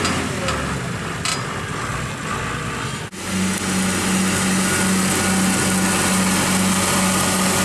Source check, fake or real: real